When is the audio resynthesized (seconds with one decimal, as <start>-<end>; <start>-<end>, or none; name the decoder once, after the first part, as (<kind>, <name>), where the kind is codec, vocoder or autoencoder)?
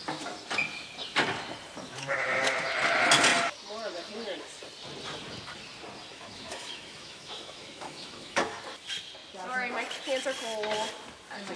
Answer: 6.1-8.6 (autoencoder, DAC-VAE)